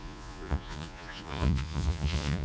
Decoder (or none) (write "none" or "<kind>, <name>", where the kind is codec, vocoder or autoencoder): vocoder, Vocos